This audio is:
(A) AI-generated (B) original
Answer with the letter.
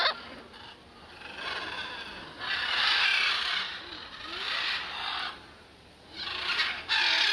B